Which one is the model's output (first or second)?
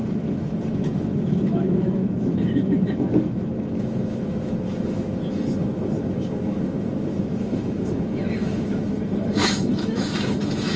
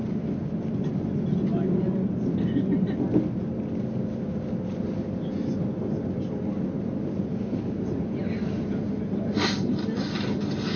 first